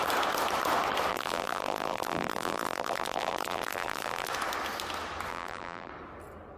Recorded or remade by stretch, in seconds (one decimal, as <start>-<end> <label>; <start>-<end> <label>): 0.0-1.1 recorded; 1.1-4.3 remade; 4.3-5.3 recorded; 5.3-5.9 remade; 5.9-6.6 recorded